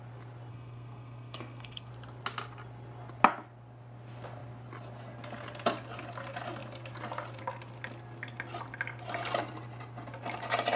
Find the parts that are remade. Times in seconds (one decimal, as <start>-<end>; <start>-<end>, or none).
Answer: 0.5-1.9